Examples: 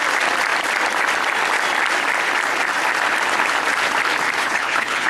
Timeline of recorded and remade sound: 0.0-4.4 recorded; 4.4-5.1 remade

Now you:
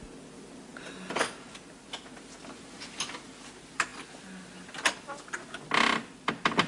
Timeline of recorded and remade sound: 0.0-6.7 recorded

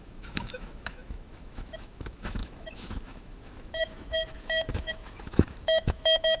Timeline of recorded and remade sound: 0.0-6.4 remade

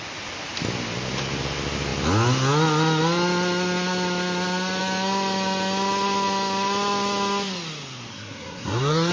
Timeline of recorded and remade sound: 0.0-8.1 recorded; 8.1-9.1 remade

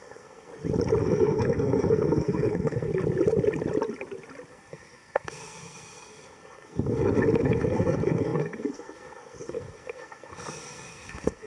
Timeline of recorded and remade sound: 0.0-0.5 remade; 0.5-1.0 recorded; 1.0-2.9 remade; 2.9-4.5 recorded; 4.5-11.5 remade